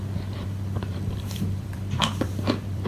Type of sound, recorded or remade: remade